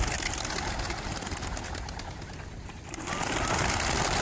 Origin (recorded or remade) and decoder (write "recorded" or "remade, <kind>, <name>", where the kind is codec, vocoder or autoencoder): recorded